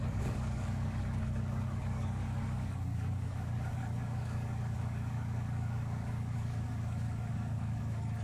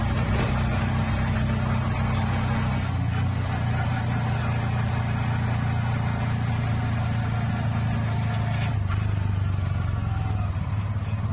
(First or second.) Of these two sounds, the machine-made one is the first